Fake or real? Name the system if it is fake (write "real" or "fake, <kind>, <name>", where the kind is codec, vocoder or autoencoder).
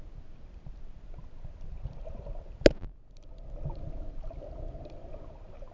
real